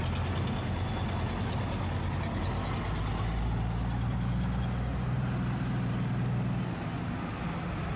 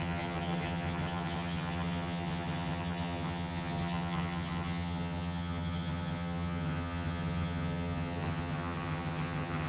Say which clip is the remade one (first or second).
second